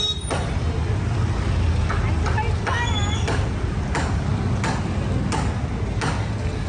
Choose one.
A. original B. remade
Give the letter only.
A